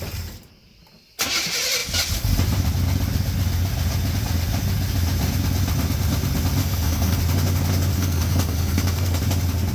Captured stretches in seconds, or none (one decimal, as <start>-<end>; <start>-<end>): 0.0-6.6; 7.2-7.9; 9.2-9.7